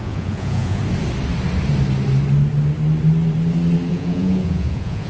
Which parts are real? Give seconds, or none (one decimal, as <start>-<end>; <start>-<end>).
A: 0.8-3.9